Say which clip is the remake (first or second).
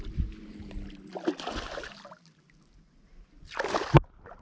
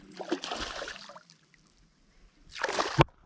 second